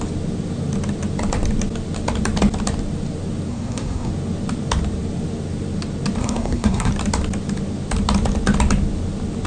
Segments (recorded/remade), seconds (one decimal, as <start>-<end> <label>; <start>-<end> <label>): 0.0-3.5 recorded; 3.5-4.1 remade; 4.1-6.2 recorded; 6.2-6.9 remade; 6.9-9.5 recorded